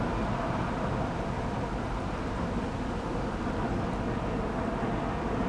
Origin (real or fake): real